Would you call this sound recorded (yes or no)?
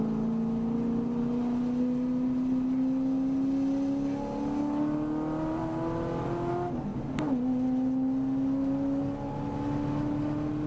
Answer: yes